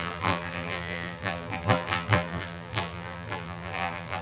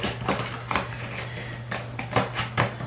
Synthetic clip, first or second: first